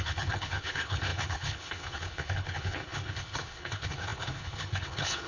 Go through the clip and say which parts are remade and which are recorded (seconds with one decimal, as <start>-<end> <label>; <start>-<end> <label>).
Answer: 0.0-5.3 remade